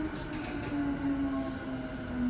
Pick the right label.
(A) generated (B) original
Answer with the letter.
B